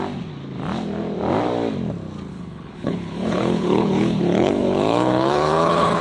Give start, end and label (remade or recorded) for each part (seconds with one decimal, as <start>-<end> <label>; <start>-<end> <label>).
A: 0.0-2.3 recorded; 2.3-6.0 remade